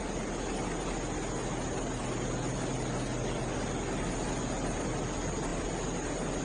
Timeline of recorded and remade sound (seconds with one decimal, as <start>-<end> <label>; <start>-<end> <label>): 0.0-6.4 recorded